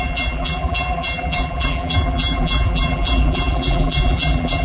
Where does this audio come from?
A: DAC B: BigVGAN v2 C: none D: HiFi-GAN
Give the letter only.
B